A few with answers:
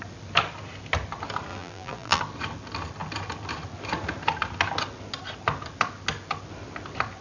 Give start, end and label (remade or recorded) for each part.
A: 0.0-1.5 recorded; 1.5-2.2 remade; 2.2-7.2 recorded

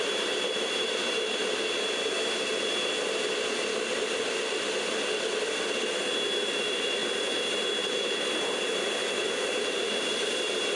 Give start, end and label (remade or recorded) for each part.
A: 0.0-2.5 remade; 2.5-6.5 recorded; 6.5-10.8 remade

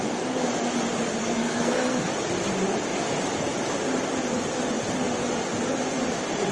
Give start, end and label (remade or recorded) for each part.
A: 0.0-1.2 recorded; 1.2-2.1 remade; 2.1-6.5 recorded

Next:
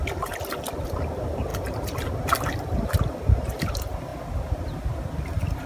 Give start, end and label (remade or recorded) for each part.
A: 0.0-5.7 recorded

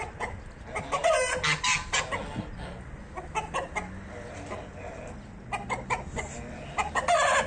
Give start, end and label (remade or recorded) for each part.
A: 0.0-7.5 recorded